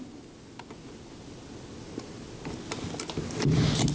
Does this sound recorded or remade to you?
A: recorded